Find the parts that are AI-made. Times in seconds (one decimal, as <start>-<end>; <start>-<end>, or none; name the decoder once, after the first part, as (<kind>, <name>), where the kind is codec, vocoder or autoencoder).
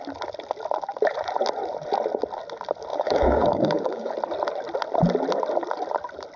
2.9-4.1 (codec, DAC)